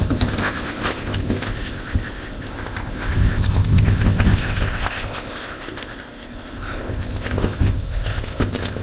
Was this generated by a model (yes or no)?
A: yes